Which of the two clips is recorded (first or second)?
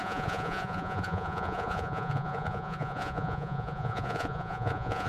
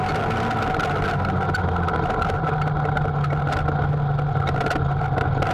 second